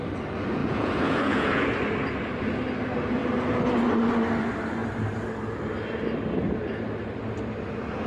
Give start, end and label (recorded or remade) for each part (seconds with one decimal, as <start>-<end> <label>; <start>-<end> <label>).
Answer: 0.0-0.6 recorded; 0.6-1.7 remade; 1.7-8.1 recorded